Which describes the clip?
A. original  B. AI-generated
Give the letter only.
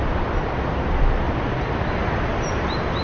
A